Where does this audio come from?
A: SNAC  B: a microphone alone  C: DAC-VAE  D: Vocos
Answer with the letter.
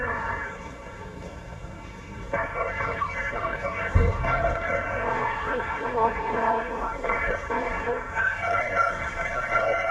A